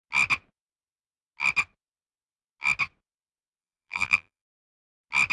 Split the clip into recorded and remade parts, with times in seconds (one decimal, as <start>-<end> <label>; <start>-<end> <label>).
0.0-3.6 recorded; 3.6-4.7 remade; 4.7-5.3 recorded